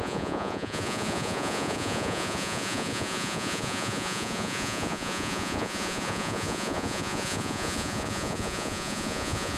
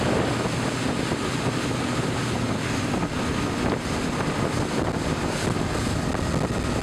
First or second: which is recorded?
second